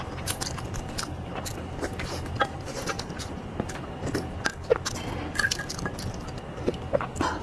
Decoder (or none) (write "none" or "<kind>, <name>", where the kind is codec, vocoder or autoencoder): none